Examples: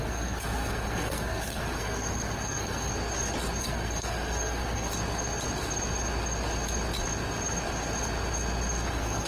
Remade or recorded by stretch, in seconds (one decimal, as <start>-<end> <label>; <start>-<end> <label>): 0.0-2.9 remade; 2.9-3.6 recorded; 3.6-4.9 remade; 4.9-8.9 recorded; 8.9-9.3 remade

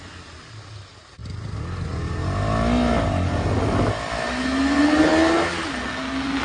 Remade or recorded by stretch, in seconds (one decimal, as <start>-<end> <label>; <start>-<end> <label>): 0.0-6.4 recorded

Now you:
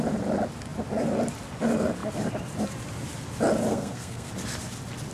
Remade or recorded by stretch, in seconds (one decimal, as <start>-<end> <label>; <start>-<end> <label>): 0.0-3.7 recorded; 3.7-4.3 remade; 4.3-5.1 recorded

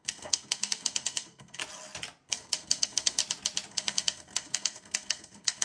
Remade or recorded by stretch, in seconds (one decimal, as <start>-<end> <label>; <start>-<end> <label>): 0.0-1.6 remade; 1.6-2.3 recorded; 2.3-3.2 remade; 3.2-3.7 recorded; 3.7-5.6 remade

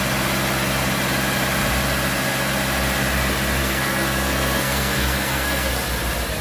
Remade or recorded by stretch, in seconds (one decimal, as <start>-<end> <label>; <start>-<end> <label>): 0.0-3.6 recorded; 3.6-5.7 remade; 5.7-6.4 recorded